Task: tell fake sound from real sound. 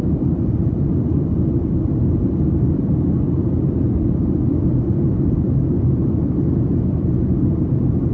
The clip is fake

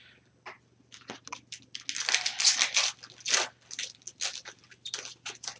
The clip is real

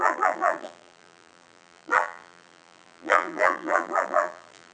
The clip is fake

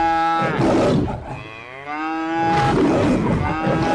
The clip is real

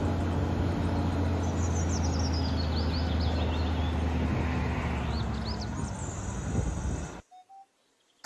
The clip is real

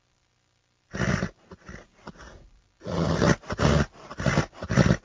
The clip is real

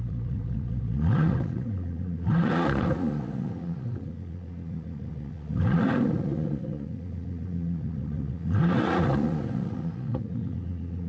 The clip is fake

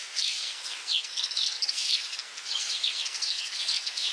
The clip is fake